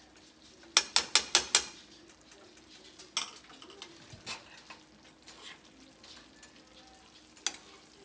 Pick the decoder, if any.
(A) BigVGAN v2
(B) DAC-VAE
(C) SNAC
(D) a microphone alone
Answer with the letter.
D